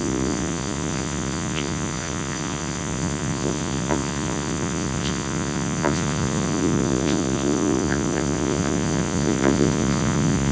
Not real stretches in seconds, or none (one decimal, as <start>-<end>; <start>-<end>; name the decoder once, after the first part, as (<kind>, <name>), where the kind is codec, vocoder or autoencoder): 0.0-10.5 (vocoder, Vocos)

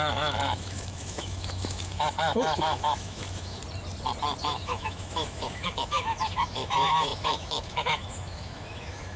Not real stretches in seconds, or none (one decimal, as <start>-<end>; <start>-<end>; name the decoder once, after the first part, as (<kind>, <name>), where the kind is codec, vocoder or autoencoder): 0.0-3.6 (autoencoder, DAC-VAE); 4.4-9.2

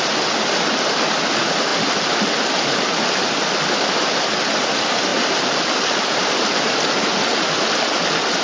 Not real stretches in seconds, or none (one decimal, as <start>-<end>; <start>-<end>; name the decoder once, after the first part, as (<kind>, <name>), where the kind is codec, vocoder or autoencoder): 0.0-5.1 (vocoder, BigVGAN v2); 6.2-8.4

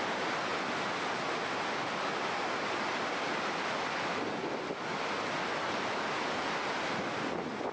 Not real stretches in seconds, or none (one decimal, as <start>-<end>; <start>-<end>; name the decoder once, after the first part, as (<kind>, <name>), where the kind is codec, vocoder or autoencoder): none

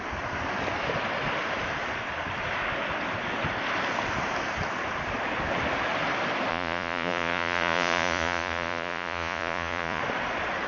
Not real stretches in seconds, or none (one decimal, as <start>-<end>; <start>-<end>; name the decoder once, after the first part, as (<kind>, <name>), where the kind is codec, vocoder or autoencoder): 6.5-10.0 (vocoder, Vocos)

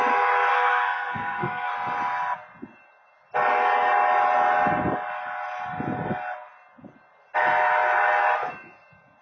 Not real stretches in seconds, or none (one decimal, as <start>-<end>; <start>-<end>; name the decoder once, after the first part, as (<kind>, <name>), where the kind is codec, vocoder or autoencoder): 0.5-1.7 (codec, SNAC)

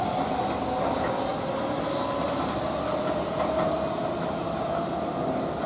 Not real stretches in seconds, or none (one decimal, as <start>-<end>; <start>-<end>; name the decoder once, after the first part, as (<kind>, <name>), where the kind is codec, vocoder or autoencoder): none